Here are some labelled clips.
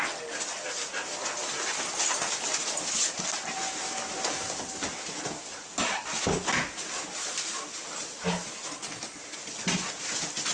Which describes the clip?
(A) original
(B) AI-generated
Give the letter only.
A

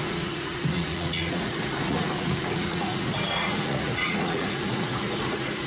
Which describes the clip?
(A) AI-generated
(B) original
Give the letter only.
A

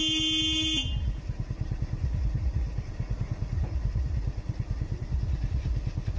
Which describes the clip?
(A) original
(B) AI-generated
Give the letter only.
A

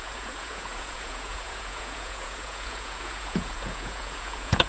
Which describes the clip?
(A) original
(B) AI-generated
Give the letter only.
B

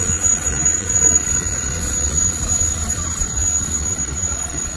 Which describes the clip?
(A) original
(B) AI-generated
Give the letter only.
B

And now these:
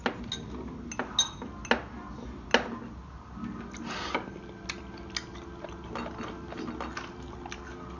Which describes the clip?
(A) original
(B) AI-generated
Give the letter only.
A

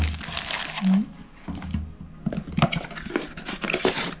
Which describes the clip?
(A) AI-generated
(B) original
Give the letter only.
B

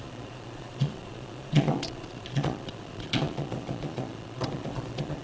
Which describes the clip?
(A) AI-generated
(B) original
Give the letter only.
A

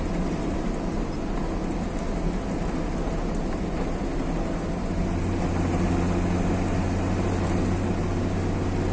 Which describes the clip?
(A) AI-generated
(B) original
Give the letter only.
B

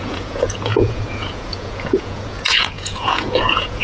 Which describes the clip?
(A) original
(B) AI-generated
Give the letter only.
B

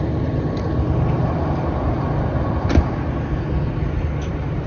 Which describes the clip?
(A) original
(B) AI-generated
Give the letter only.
A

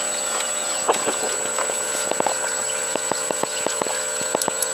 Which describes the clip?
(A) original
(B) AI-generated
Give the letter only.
B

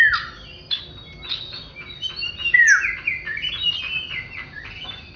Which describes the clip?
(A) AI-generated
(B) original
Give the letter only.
B